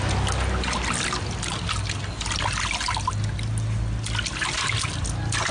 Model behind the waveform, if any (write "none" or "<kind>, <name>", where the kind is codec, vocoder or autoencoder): none